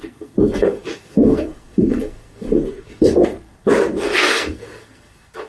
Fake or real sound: fake